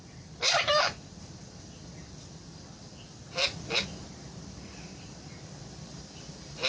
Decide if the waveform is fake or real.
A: fake